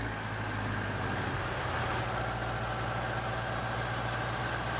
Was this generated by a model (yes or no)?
no